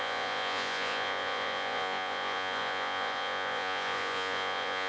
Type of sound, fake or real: fake